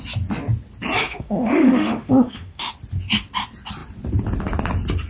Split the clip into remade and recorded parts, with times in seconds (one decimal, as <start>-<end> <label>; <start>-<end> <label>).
0.0-1.0 recorded; 1.0-2.7 remade; 2.7-5.1 recorded

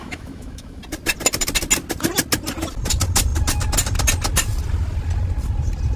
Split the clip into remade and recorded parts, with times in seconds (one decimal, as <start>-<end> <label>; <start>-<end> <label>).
0.0-0.8 remade; 0.8-6.0 recorded

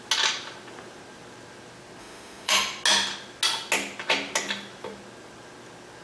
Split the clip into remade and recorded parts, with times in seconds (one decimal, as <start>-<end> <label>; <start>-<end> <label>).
0.0-2.0 recorded; 2.0-2.5 remade; 2.5-6.0 recorded

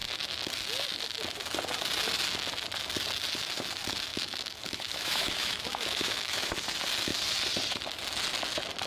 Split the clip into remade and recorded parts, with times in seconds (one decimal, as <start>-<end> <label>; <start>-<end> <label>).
0.0-4.1 recorded; 4.1-6.5 remade; 6.5-8.9 recorded

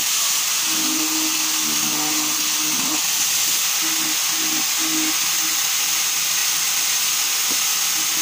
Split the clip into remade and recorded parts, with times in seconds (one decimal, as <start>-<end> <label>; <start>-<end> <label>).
0.0-8.2 recorded

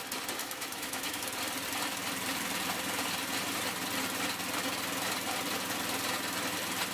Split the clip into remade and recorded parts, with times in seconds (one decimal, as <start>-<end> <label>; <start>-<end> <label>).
0.0-0.4 recorded; 0.4-1.2 remade; 1.2-6.9 recorded

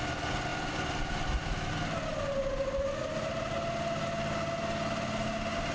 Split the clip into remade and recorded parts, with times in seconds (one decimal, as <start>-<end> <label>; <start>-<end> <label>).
0.0-5.7 recorded

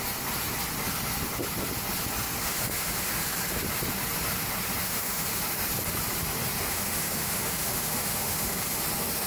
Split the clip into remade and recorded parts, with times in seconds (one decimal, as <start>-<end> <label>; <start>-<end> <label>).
0.0-2.4 recorded; 2.4-3.1 remade; 3.1-4.8 recorded; 4.8-5.4 remade; 5.4-6.7 recorded; 6.7-8.8 remade; 8.8-9.3 recorded